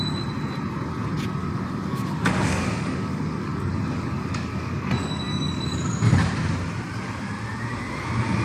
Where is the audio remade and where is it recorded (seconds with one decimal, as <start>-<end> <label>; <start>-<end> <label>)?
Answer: 0.0-1.4 recorded; 1.4-6.0 remade; 6.0-8.4 recorded